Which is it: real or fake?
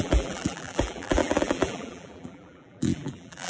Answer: fake